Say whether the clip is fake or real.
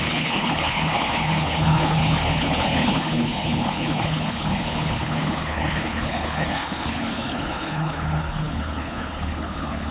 fake